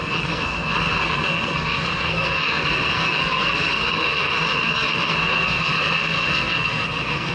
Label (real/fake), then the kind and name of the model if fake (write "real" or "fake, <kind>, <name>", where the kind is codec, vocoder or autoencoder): fake, codec, SNAC